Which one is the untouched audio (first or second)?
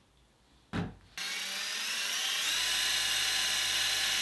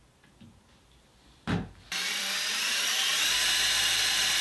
first